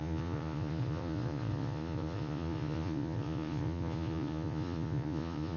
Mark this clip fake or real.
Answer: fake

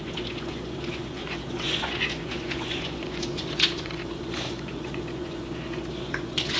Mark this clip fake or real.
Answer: fake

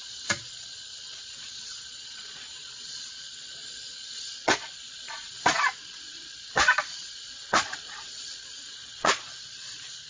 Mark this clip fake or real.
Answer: fake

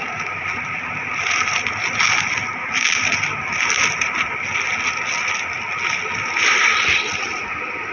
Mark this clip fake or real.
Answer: real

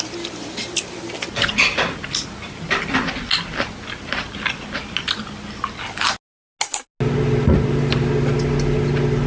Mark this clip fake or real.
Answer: real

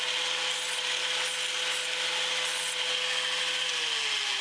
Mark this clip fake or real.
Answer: real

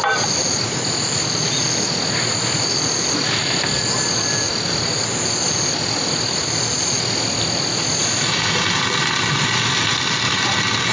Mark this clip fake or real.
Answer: real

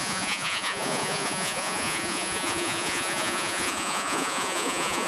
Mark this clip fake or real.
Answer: fake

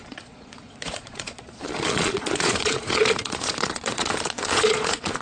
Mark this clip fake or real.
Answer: fake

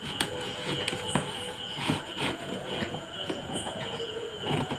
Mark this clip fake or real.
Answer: fake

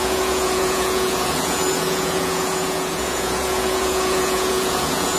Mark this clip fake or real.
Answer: fake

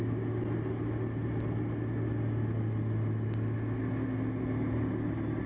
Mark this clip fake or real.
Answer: real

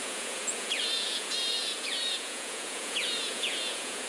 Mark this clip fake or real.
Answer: fake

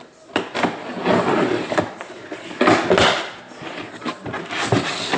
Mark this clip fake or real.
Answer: real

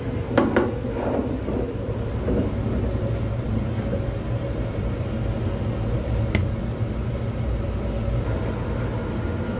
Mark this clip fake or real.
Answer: real